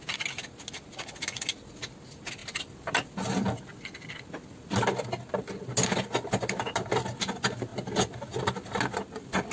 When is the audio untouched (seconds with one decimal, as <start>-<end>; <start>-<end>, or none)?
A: 0.0-9.5